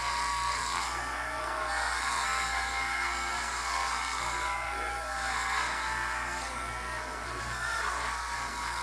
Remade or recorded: remade